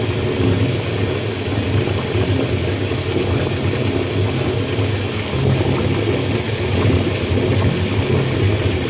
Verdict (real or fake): real